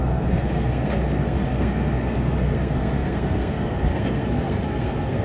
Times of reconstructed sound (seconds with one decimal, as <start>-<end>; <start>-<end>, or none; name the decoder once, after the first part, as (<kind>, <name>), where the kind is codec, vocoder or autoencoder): 0.0-5.2 (codec, SNAC)